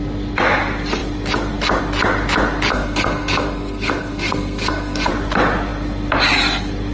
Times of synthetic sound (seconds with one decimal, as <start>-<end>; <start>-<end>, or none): 2.7-5.1